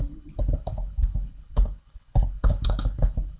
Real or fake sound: fake